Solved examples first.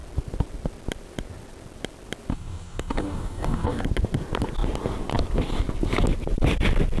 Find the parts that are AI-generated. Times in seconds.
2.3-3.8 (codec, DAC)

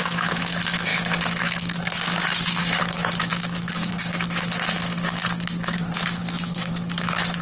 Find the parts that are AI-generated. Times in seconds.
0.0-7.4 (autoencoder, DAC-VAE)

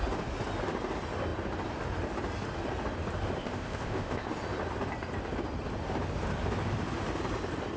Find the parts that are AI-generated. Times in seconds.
3.4-4.3 (codec, ZipCodec)

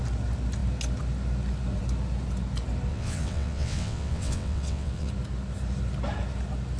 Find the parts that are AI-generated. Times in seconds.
2.9-5.1 (vocoder, WaveNeXt)

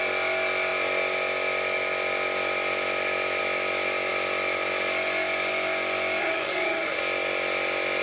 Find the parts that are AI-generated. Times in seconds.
6.2-7.0 (autoencoder, DAC-VAE)

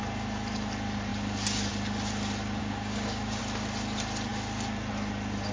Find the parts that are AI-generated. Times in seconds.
2.6-3.4 (codec, DAC)